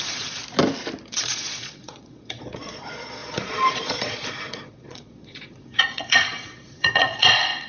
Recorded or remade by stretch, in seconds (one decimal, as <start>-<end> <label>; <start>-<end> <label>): 0.0-0.4 remade; 0.4-1.1 recorded; 1.1-7.7 remade